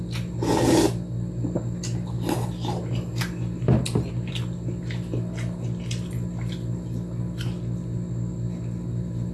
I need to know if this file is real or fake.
real